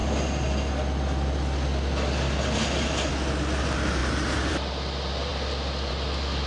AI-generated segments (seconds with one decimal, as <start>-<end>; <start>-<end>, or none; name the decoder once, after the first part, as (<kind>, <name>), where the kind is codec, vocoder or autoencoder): 4.0-4.5 (vocoder, BigVGAN v2)